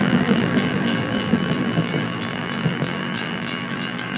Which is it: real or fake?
fake